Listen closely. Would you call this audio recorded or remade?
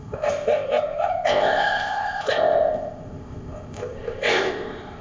remade